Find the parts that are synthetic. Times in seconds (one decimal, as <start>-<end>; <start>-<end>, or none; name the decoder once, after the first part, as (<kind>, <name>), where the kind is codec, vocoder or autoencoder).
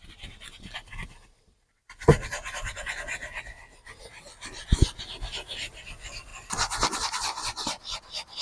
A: none